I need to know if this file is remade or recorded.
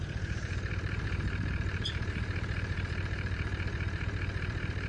remade